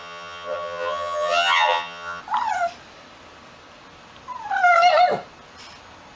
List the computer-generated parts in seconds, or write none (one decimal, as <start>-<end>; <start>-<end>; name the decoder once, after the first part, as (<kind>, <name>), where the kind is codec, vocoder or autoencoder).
0.0-2.2 (vocoder, HiFi-GAN)